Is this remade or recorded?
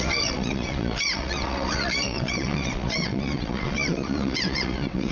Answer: remade